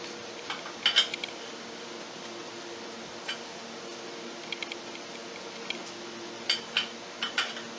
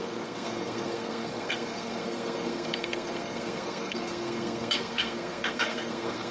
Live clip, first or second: first